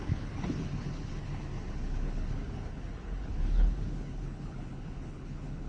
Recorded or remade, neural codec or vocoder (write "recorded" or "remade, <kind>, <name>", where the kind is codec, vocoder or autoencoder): remade, codec, HILCodec